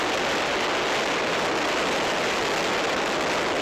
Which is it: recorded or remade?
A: recorded